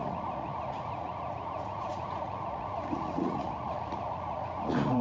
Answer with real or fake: fake